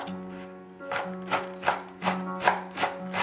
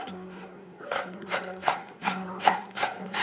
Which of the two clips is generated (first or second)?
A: second